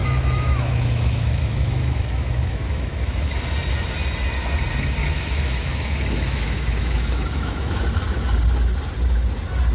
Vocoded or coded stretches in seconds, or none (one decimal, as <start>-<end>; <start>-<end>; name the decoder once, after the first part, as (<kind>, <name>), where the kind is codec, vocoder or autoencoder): 0.0-3.3 (autoencoder, DAC-VAE); 5.0-7.8